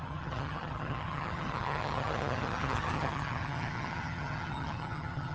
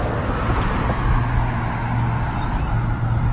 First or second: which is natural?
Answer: second